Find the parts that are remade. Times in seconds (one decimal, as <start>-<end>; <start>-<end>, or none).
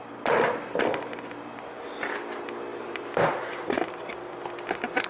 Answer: 2.7-3.8